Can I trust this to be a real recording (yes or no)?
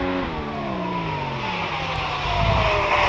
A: yes